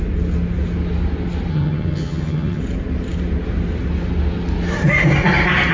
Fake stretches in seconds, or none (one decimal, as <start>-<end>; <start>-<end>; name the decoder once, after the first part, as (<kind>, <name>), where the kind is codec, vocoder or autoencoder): 1.5-2.6 (vocoder, HiFi-GAN)